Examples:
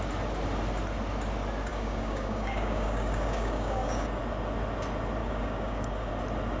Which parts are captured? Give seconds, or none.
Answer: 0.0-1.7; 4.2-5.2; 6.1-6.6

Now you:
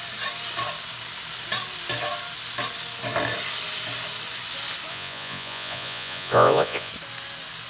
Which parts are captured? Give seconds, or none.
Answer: 0.0-4.9; 6.9-7.7

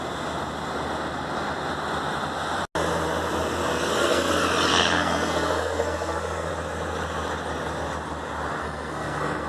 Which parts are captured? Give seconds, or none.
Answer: 0.0-3.6; 4.3-4.7; 6.5-8.6

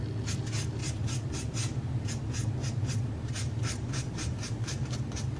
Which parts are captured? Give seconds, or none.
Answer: 0.0-2.6

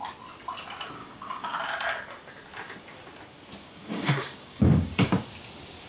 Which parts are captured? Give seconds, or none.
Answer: 0.0-1.0; 1.6-3.6; 5.1-5.9

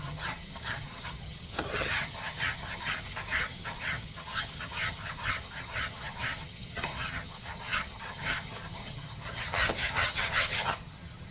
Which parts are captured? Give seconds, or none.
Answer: 2.9-3.4

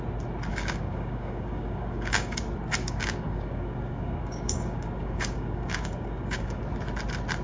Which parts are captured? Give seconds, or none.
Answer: 0.0-0.5; 2.4-2.8; 6.6-7.4